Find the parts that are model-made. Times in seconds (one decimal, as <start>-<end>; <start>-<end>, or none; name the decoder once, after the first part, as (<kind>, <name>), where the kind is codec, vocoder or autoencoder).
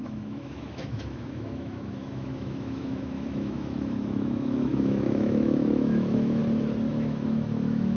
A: 0.0-6.4 (autoencoder, DAC-VAE); 6.9-8.0